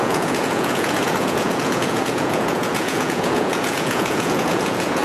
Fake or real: fake